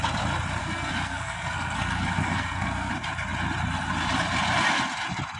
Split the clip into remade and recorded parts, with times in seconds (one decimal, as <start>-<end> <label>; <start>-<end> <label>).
0.0-0.6 recorded; 0.6-2.9 remade; 2.9-5.4 recorded